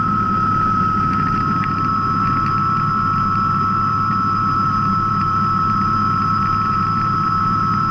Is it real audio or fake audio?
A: fake